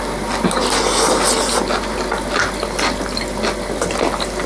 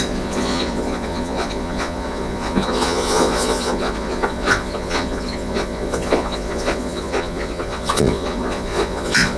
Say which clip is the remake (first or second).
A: second